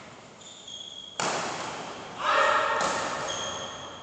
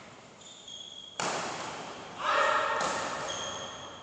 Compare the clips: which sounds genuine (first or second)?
first